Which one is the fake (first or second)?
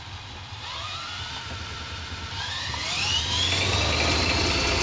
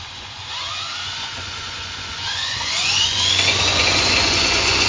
second